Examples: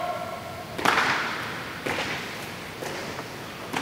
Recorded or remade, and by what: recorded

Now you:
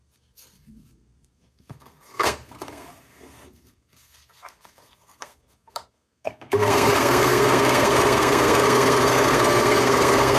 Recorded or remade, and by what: remade, codec, SNAC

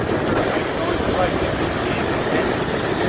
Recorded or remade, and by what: recorded